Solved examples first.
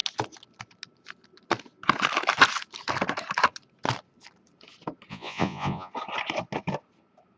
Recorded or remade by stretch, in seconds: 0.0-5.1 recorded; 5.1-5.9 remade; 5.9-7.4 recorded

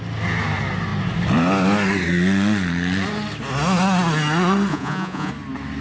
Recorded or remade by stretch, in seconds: 0.0-4.7 recorded; 4.7-5.3 remade; 5.3-5.8 recorded